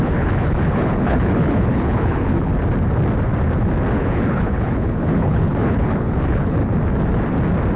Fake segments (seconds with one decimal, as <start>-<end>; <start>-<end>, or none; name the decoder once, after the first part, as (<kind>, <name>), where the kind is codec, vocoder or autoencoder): 0.0-2.5 (codec, HILCodec); 3.9-6.6

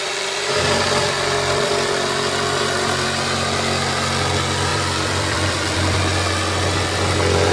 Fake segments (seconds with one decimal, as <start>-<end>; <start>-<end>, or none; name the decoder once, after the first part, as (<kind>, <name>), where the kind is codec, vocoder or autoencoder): 4.7-6.0 (vocoder, BigVGAN v2)

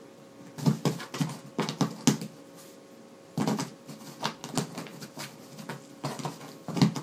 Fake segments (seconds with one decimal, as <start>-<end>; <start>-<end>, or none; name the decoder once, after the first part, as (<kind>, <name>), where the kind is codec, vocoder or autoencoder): none

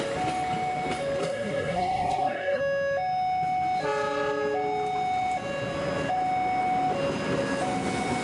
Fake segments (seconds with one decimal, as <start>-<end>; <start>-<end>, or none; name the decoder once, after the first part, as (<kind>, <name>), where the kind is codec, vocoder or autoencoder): 1.2-2.6 (codec, SNAC)

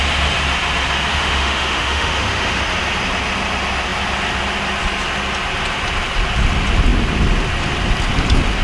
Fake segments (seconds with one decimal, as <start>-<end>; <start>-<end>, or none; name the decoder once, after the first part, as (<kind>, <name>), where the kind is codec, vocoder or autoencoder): 1.1-2.6 (autoencoder, DAC-VAE)

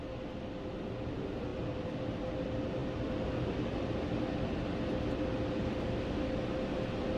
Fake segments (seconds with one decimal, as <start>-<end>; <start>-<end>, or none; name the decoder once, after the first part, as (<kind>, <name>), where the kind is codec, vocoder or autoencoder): none

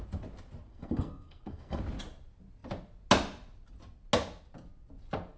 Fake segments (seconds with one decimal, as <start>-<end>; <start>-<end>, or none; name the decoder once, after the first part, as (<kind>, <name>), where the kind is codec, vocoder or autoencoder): 0.7-1.8 (codec, SNAC)

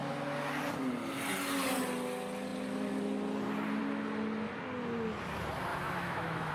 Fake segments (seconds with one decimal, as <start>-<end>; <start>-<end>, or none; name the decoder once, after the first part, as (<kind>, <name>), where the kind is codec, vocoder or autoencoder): 5.7-6.5 (autoencoder, DAC-VAE)